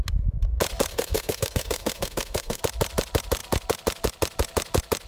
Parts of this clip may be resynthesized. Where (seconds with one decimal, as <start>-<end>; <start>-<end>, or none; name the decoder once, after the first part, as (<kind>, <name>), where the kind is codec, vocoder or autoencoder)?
0.9-2.6 (codec, SNAC)